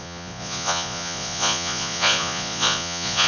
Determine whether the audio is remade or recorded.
remade